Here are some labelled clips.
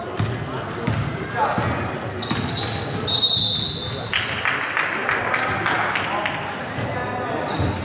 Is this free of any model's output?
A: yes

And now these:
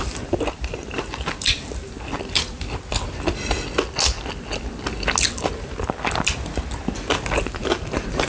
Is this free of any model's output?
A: yes